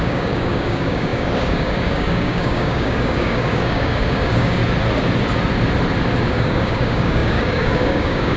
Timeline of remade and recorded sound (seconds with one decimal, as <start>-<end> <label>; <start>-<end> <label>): 0.0-4.6 remade; 4.6-6.2 recorded; 6.2-8.4 remade